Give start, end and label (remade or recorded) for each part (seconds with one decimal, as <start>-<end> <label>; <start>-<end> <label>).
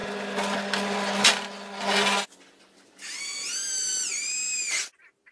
0.0-5.3 recorded